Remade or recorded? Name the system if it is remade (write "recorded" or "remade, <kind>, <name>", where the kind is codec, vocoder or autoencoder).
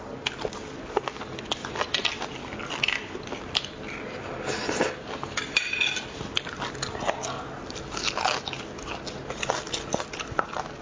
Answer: recorded